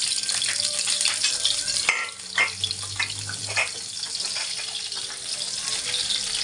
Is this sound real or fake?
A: real